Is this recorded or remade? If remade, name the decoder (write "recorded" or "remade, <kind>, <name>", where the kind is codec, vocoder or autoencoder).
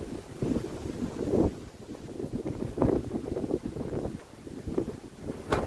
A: recorded